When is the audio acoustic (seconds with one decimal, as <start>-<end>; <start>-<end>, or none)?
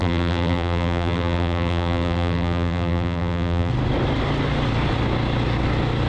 3.7-6.1